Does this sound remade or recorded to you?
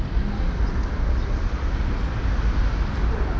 recorded